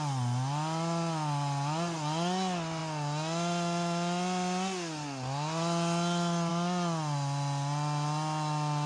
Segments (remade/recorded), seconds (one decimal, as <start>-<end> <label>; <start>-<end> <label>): 0.0-8.9 recorded